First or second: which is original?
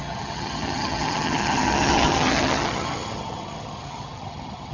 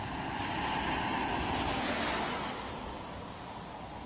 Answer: second